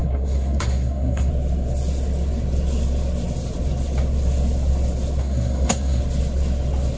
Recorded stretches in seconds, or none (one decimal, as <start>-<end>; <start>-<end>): 1.3-5.2; 6.0-7.0